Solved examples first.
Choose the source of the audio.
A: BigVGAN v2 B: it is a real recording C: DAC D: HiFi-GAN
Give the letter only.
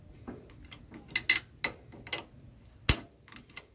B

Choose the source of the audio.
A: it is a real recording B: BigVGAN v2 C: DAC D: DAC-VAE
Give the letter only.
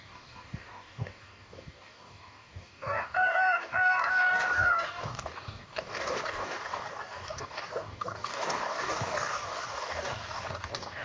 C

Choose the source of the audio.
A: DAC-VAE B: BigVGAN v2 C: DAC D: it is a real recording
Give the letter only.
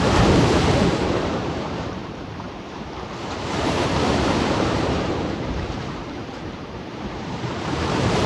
B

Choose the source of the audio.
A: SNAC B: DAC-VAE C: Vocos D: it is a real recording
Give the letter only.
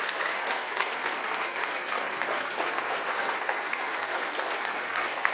A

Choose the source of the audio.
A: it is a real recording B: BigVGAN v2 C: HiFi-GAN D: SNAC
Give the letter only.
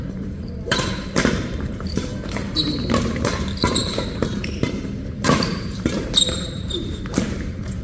B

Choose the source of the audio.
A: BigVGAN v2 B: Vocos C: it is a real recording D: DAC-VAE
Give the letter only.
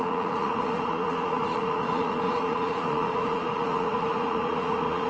B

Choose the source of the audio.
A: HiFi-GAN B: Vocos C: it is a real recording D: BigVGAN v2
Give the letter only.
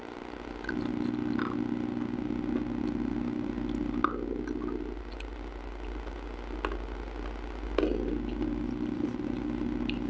C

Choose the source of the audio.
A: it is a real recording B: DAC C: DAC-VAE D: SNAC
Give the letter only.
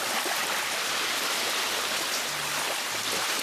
A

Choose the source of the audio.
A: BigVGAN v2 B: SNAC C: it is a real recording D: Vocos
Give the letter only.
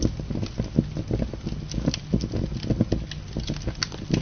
C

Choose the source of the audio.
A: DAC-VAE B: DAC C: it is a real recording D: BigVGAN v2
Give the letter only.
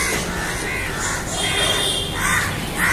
C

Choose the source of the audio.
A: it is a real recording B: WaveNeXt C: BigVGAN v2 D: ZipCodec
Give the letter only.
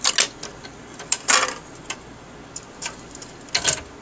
A